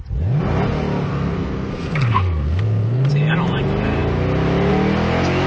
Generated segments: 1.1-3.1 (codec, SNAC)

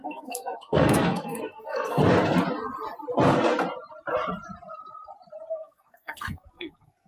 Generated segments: 0.0-2.0 (codec, SNAC); 5.5-7.1

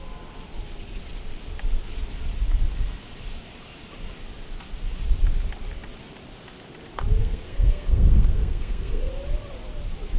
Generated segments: 7.2-9.1 (codec, SNAC)

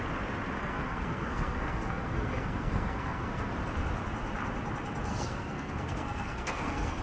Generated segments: 0.6-3.5 (codec, SNAC); 5.1-7.0

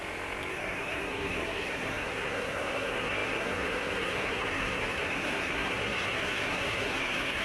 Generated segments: 0.5-7.4 (codec, SNAC)

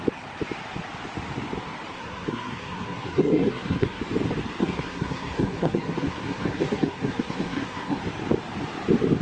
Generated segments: 1.9-4.0 (codec, SNAC); 4.6-8.0

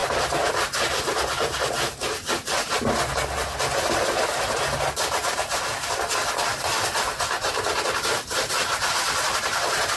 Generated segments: none

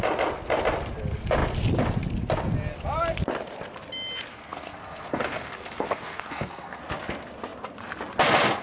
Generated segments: 4.3-6.8 (codec, SNAC)